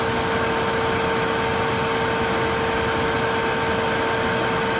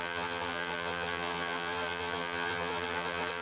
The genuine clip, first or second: first